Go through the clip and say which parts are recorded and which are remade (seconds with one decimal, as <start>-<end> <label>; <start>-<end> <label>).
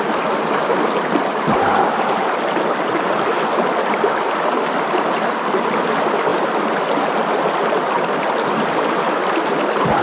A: 0.0-10.0 recorded